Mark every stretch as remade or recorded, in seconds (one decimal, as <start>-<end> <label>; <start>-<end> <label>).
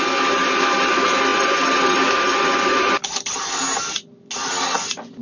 0.0-3.0 recorded; 3.0-3.6 remade; 3.6-5.2 recorded